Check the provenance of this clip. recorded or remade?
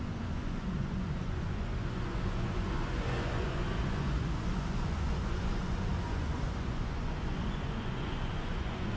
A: remade